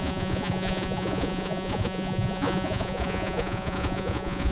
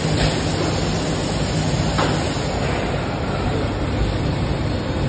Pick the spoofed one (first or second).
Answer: first